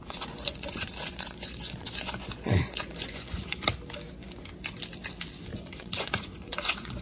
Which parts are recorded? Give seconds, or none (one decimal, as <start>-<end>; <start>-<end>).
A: 3.6-5.5